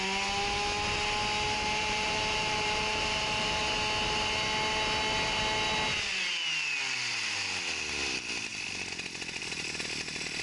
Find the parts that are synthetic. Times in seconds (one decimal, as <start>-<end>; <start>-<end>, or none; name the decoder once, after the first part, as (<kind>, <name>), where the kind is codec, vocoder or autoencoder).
1.8-3.6 (vocoder, BigVGAN v2)